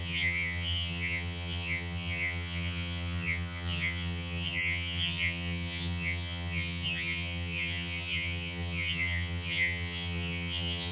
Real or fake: fake